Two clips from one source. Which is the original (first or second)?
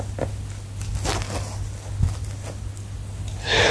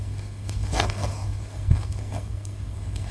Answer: first